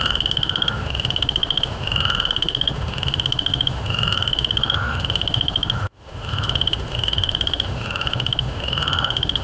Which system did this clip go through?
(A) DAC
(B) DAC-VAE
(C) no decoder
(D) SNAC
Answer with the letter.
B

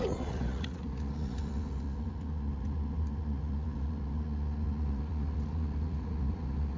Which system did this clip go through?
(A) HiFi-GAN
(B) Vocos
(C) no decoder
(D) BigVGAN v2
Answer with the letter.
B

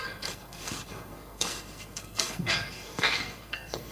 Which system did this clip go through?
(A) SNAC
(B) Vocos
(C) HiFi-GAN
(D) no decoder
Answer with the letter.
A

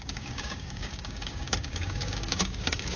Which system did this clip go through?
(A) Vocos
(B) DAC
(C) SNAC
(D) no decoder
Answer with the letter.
B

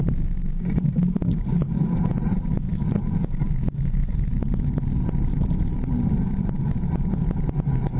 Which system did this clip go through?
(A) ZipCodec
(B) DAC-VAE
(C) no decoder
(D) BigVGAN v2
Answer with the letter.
D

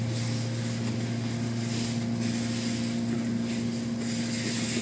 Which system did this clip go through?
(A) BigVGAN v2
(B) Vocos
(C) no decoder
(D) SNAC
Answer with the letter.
C